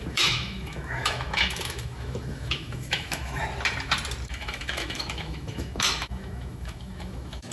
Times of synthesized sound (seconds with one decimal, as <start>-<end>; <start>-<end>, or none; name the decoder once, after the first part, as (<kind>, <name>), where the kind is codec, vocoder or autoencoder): 0.0-3.4 (autoencoder, DAC-VAE); 4.3-7.5

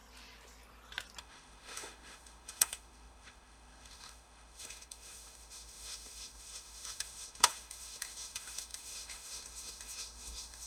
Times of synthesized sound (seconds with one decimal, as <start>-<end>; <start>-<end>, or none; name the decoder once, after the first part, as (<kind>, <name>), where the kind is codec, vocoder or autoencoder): 1.2-10.7 (autoencoder, DAC-VAE)

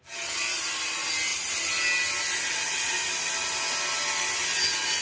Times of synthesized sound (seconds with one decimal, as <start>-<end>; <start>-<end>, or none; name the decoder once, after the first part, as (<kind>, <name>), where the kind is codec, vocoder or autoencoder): none